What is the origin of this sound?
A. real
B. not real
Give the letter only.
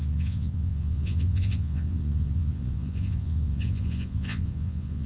B